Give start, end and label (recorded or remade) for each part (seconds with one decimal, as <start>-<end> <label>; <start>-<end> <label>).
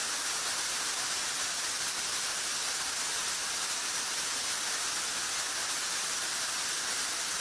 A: 0.0-7.4 recorded